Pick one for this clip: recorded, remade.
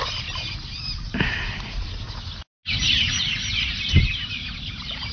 recorded